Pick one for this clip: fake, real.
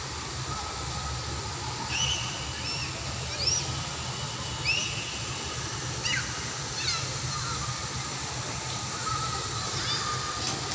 real